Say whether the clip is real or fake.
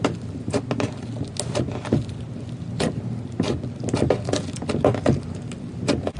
real